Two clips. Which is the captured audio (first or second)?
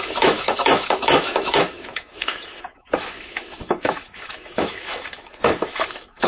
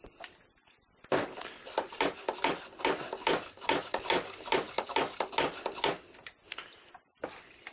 second